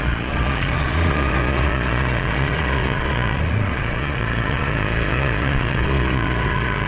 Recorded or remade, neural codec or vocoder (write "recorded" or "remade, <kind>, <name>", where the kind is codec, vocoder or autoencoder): remade, vocoder, Vocos